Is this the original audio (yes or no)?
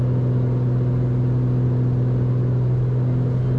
yes